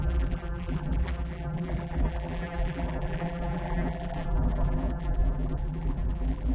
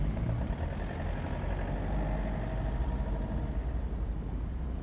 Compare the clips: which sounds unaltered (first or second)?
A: second